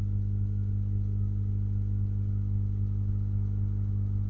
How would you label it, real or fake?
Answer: real